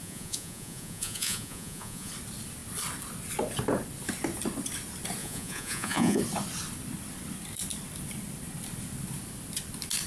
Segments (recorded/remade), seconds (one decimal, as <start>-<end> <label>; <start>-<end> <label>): 0.0-2.1 remade; 2.1-5.2 recorded; 5.2-6.2 remade; 6.2-10.1 recorded